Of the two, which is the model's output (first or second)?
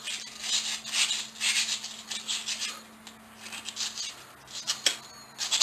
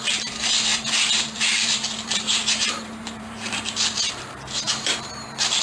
second